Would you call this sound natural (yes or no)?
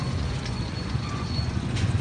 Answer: no